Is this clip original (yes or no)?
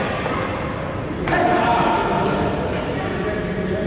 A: yes